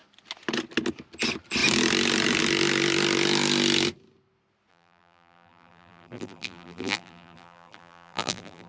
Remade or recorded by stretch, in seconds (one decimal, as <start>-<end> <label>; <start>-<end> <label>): 0.0-4.7 recorded; 4.7-8.7 remade